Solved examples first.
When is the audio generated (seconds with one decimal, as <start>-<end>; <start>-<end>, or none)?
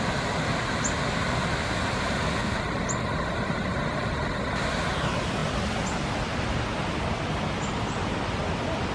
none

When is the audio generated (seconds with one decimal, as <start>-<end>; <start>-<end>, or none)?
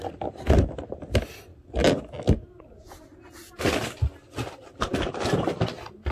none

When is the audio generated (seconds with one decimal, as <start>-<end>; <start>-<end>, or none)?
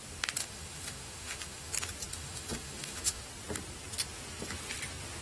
0.4-1.7; 2.1-3.2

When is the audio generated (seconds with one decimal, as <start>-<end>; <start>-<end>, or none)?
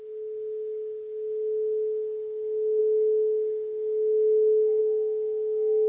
none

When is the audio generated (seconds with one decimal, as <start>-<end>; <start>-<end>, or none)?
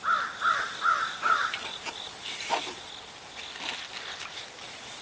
none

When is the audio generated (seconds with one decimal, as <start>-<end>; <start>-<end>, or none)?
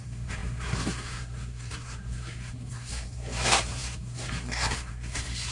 0.0-5.5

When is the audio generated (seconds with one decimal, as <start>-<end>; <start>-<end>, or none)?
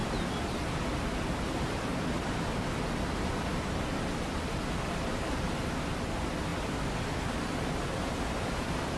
none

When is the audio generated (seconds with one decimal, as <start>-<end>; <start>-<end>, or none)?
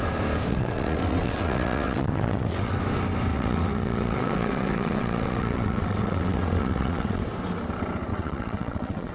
0.5-2.7; 3.3-7.2; 8.1-9.1